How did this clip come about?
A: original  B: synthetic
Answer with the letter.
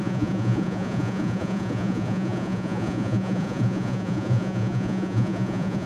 B